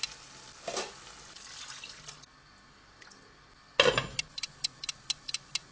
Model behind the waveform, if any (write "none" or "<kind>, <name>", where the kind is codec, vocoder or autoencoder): none